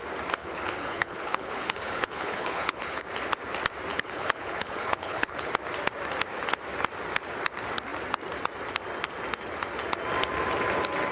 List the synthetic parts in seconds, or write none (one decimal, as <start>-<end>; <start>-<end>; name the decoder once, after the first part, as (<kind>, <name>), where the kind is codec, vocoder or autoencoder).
0.4-3.0 (codec, HILCodec); 3.9-5.5